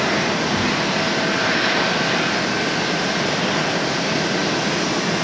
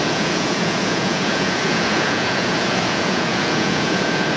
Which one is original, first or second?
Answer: first